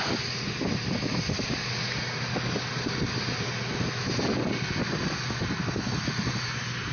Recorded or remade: recorded